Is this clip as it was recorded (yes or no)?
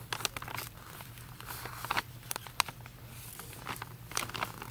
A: yes